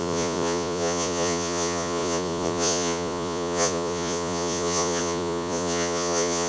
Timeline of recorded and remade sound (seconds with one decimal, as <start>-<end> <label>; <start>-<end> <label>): 0.0-6.5 remade